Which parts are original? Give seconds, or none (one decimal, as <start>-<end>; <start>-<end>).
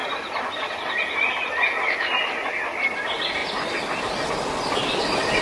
0.0-5.4